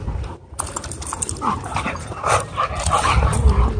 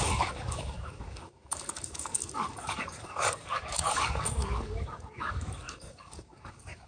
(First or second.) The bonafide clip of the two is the first